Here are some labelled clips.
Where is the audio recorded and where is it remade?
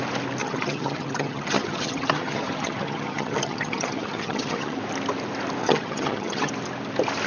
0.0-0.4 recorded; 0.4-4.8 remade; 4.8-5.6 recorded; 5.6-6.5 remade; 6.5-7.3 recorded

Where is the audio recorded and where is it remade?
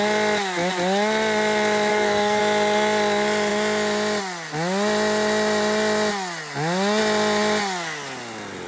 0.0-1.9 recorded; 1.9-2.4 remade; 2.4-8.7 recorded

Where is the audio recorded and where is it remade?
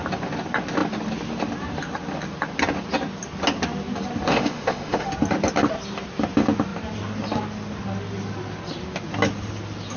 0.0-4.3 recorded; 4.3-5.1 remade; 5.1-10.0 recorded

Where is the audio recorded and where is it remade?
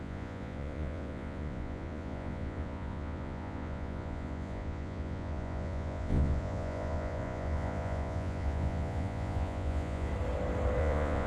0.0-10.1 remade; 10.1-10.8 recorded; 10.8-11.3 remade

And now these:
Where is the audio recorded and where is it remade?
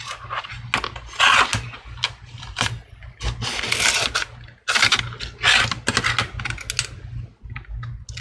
0.0-8.2 recorded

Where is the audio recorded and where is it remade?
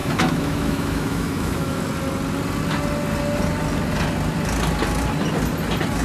0.0-1.8 remade; 1.8-6.0 recorded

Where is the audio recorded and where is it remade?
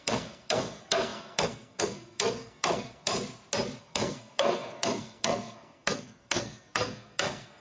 0.0-3.1 remade; 3.1-3.8 recorded; 3.8-7.6 remade